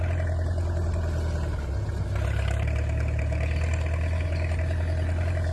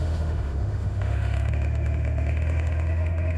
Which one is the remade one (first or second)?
second